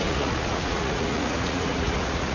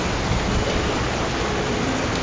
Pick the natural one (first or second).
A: second